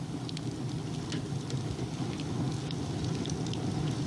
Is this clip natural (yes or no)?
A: yes